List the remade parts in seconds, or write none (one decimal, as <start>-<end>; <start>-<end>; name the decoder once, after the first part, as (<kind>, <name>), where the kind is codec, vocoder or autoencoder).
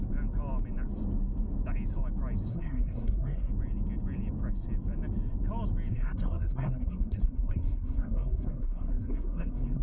2.5-3.5 (codec, SNAC); 5.9-9.8